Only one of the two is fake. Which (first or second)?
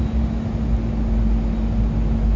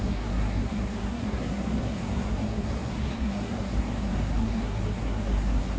second